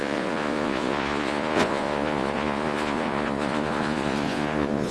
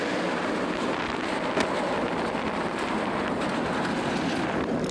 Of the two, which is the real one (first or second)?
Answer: second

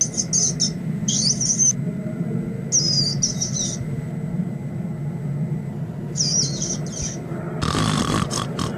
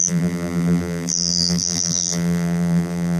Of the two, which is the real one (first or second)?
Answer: first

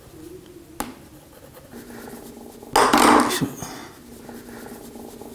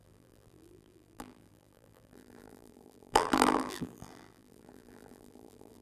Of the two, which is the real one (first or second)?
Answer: first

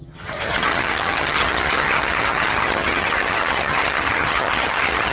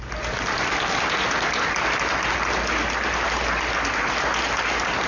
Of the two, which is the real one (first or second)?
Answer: second